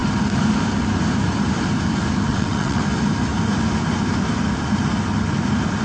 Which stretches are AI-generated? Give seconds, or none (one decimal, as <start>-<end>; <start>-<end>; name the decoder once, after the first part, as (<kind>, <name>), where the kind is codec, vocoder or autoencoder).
2.3-2.8 (vocoder, WaveNeXt)